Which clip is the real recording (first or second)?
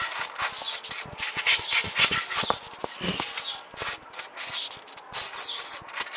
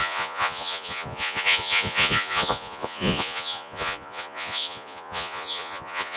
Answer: first